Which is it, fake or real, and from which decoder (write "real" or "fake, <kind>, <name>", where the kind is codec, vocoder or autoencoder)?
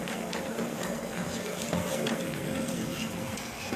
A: fake, codec, SNAC